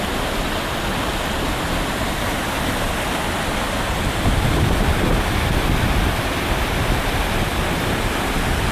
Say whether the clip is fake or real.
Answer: real